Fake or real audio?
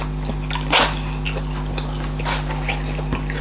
real